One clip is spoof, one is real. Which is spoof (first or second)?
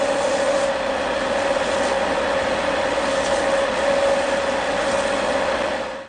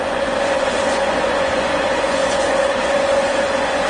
second